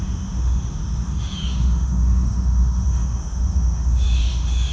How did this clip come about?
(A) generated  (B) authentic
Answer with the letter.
A